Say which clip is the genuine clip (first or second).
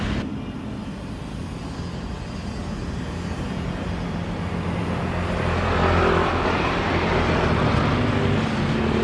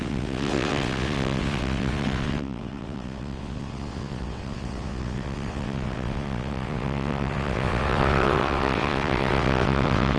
first